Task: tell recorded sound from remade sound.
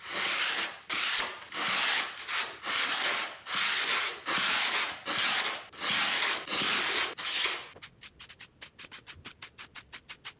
recorded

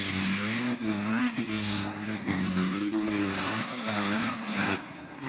remade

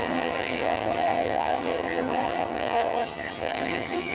remade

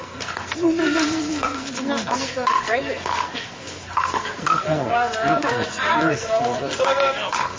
remade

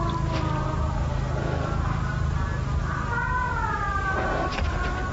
recorded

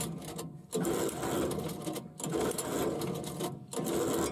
recorded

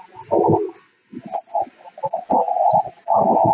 recorded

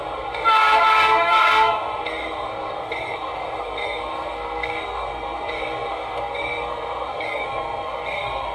remade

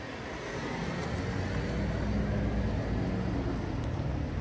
recorded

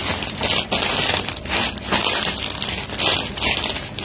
recorded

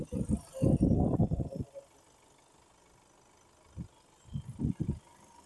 recorded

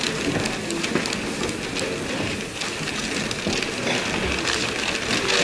recorded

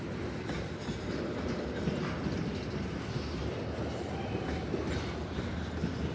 recorded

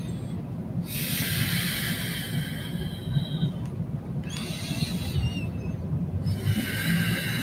recorded